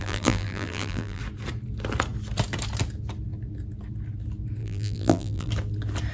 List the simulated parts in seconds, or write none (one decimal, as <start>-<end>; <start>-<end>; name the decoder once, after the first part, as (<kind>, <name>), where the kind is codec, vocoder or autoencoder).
0.0-1.2 (vocoder, BigVGAN v2); 4.6-5.5